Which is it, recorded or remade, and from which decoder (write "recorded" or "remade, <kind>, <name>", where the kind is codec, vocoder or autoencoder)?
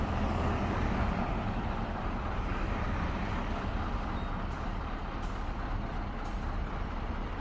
remade, vocoder, BigVGAN v2